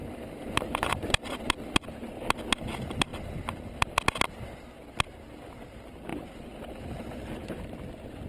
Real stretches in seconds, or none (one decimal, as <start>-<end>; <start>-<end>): 2.4-3.1; 4.2-6.1; 7.6-8.3